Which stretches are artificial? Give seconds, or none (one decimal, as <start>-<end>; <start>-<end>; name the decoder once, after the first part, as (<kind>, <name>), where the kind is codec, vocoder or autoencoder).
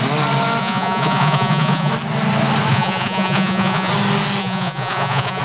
0.6-1.9 (vocoder, Vocos); 2.7-3.9; 4.4-5.4